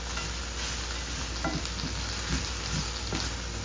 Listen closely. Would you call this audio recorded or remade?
recorded